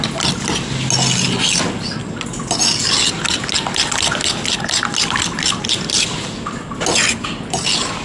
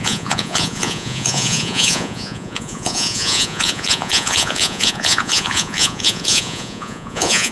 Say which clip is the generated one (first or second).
second